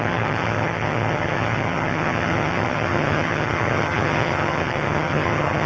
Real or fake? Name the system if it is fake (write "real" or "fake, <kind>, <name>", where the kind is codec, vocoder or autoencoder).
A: fake, vocoder, HiFi-GAN